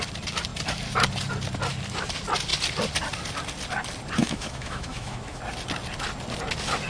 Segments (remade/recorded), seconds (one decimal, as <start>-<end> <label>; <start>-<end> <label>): 0.0-4.2 recorded; 4.2-5.4 remade; 5.4-6.9 recorded